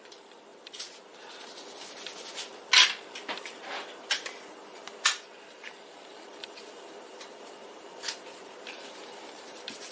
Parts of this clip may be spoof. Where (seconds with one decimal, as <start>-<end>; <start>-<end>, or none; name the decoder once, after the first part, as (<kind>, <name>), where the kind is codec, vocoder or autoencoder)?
0.5-1.4 (vocoder, BigVGAN v2); 4.7-9.9